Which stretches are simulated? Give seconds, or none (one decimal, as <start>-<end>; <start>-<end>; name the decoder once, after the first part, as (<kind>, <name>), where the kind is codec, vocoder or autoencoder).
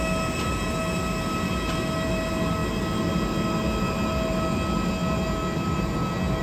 none